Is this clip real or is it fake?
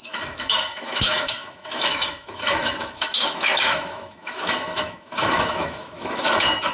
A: fake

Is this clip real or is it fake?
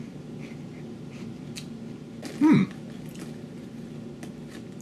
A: real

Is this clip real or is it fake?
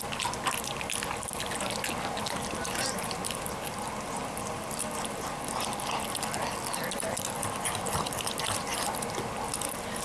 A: real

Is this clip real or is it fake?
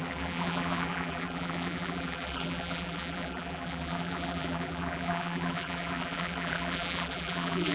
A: fake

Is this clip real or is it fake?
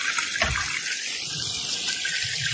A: real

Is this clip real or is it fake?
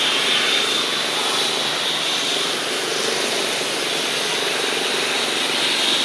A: real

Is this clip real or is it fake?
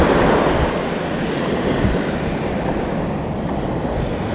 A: real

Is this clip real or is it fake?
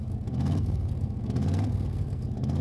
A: fake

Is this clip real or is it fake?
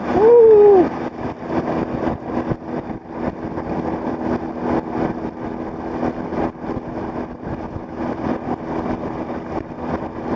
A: real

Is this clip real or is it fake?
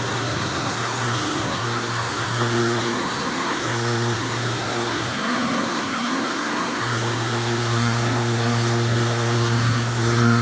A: fake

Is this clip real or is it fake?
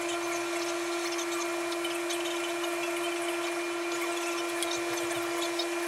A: real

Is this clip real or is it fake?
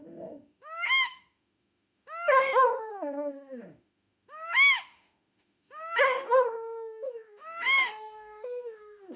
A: fake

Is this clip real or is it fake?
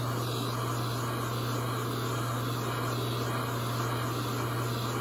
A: real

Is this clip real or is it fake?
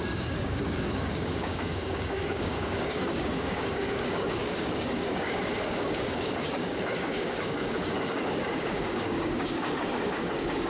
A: fake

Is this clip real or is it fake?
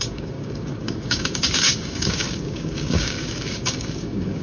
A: fake